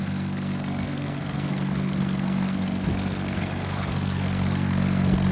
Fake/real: fake